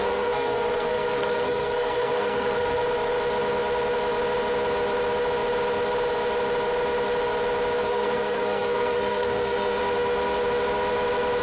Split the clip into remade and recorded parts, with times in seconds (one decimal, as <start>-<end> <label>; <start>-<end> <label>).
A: 0.0-2.8 remade; 2.8-7.8 recorded; 7.8-9.8 remade; 9.8-11.4 recorded